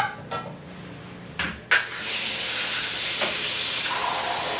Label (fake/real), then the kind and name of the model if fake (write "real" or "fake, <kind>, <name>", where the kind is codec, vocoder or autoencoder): real